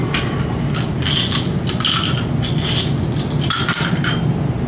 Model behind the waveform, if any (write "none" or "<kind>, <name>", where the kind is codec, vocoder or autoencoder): none